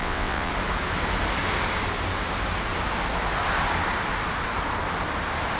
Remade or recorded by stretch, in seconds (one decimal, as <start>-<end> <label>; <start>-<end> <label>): 0.0-0.5 remade; 0.5-5.6 recorded